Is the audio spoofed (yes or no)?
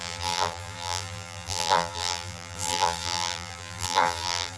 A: yes